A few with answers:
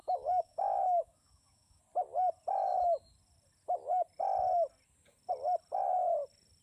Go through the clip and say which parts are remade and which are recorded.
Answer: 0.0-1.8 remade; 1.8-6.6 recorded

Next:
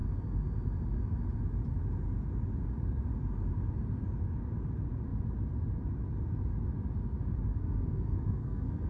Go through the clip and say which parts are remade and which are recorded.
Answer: 0.0-7.5 recorded; 7.5-8.9 remade

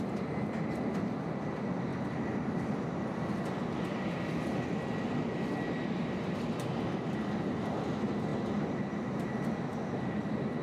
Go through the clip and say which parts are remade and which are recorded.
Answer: 0.0-10.6 recorded